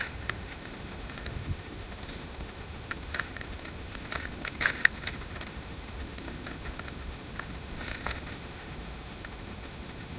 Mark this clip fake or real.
fake